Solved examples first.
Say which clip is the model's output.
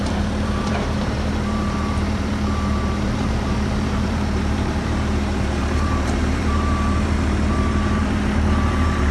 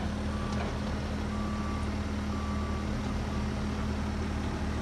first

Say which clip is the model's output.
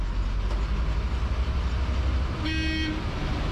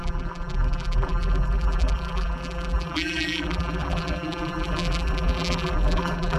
second